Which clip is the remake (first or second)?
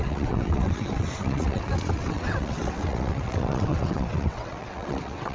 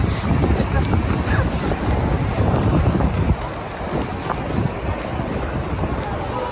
first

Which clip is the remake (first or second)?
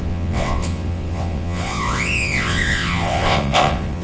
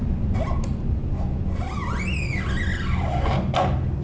first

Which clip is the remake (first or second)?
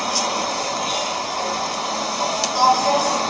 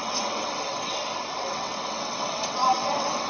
second